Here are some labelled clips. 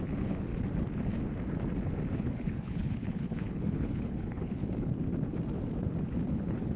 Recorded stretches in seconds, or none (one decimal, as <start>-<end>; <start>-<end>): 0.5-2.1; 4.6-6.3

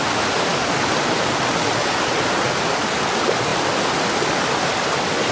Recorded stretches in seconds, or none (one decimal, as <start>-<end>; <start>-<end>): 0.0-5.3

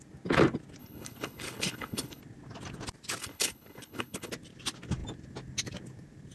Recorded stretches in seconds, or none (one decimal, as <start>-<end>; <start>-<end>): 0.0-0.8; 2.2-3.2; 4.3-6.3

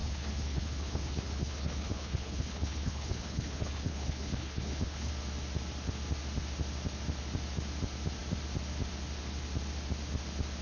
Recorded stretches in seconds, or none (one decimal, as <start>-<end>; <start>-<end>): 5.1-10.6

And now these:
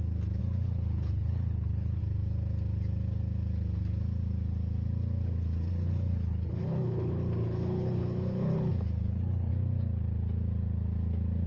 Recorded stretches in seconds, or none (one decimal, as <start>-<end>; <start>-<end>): 0.0-0.4; 2.0-5.7; 9.5-11.5